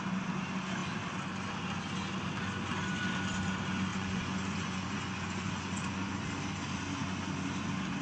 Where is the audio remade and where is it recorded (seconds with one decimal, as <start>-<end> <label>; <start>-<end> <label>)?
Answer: 0.0-3.9 recorded; 3.9-6.1 remade; 6.1-8.0 recorded

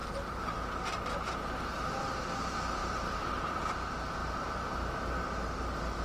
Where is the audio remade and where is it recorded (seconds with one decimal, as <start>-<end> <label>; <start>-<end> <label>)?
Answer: 0.0-1.7 remade; 1.7-2.8 recorded; 2.8-3.7 remade; 3.7-4.2 recorded; 4.2-5.6 remade; 5.6-6.0 recorded